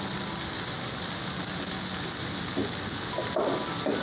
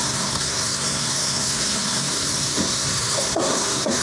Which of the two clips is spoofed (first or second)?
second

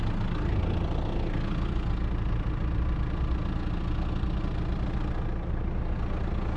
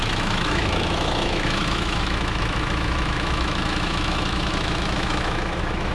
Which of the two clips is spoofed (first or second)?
second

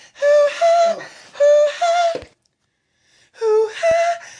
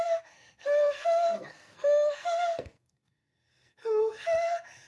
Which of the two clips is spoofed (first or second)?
second